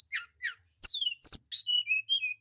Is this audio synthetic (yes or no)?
no